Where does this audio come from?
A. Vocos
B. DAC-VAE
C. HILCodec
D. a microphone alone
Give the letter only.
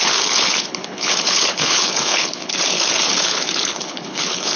C